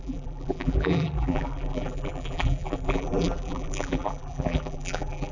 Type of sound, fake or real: fake